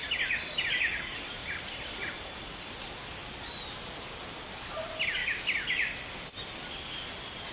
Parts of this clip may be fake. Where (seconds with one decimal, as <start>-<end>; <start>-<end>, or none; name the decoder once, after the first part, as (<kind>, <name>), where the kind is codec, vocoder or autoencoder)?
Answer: 0.0-0.6 (vocoder, BigVGAN v2); 1.4-3.6; 5.2-6.6